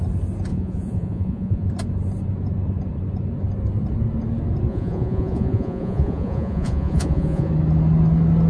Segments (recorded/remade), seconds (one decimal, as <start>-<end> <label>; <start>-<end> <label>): 0.0-0.5 recorded; 0.5-1.7 remade; 1.7-4.7 recorded; 4.7-7.5 remade; 7.5-8.5 recorded